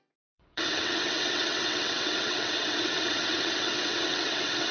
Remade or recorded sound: remade